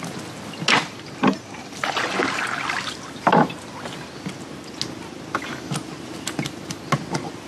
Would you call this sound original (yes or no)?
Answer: yes